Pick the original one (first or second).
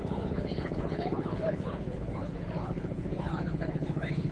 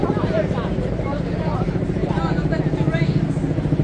second